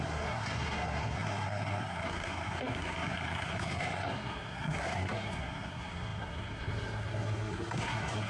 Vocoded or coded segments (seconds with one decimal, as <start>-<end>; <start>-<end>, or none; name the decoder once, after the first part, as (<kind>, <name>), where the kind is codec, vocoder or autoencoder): 0.0-8.3 (codec, SNAC)